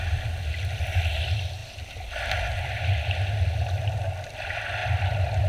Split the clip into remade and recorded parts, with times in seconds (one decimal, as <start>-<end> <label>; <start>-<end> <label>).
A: 0.0-5.5 recorded